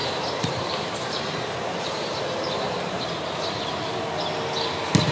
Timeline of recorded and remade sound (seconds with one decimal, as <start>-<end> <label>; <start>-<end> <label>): 0.0-3.1 remade; 3.1-5.1 recorded